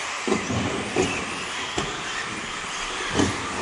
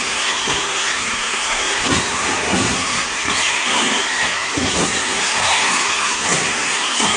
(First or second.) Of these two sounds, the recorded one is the first